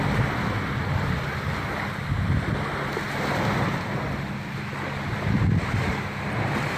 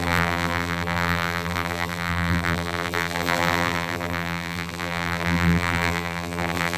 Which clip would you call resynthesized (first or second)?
second